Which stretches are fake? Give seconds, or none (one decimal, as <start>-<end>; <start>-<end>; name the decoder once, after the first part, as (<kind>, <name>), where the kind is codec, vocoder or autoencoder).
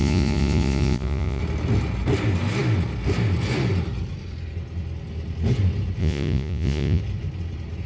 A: 0.0-1.4 (vocoder, Vocos); 6.0-7.0